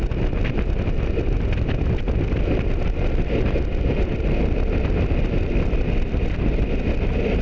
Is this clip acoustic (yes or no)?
yes